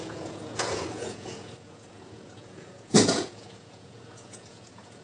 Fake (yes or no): yes